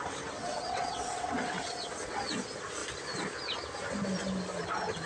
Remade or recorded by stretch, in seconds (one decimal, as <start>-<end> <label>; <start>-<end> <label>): 0.0-0.4 recorded; 0.4-2.3 remade; 2.3-5.1 recorded